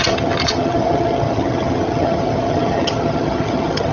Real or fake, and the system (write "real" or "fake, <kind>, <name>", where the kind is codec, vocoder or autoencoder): fake, vocoder, HiFi-GAN